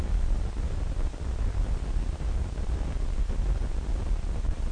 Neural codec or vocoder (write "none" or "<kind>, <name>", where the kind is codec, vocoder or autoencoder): none